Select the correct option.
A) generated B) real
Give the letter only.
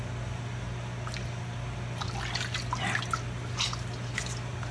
B